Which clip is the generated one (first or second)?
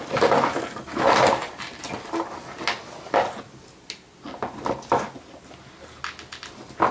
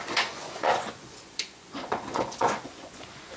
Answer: second